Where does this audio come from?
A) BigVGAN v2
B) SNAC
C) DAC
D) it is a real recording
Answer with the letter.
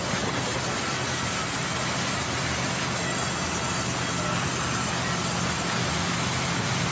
D